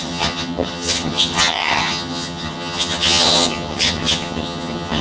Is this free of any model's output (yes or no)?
no